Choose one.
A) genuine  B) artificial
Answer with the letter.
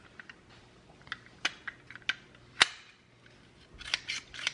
A